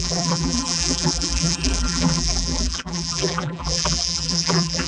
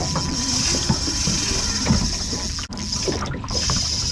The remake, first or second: first